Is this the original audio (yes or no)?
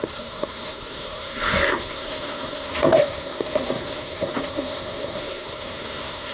no